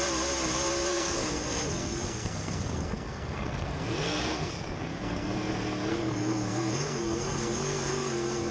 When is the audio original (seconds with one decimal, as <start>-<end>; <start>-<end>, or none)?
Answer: 0.0-0.9; 5.5-5.9